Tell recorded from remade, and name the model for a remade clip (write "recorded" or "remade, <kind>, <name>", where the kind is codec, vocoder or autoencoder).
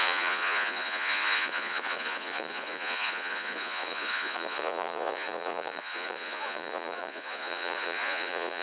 remade, vocoder, Vocos